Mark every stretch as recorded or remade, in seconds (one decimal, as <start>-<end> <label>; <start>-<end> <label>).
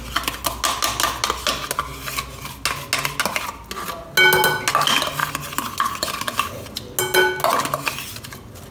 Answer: 0.0-8.7 recorded